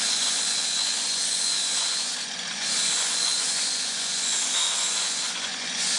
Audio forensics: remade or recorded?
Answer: remade